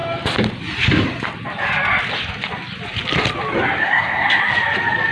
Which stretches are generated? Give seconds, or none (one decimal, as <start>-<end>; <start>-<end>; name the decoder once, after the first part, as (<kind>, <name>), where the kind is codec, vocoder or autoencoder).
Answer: 3.8-4.4 (codec, SNAC)